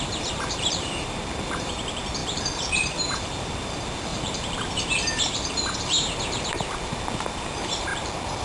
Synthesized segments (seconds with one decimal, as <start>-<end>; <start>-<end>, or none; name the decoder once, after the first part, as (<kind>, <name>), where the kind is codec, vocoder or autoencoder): 0.0-8.4 (vocoder, BigVGAN v2)